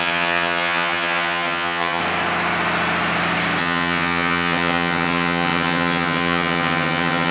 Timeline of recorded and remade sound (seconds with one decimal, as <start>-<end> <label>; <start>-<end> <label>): 0.0-2.0 remade; 2.0-3.6 recorded; 3.6-7.3 remade